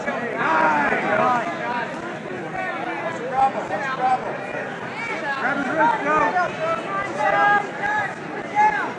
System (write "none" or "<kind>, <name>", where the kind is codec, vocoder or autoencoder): none